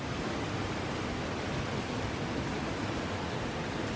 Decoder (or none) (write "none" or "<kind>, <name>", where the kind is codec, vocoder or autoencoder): none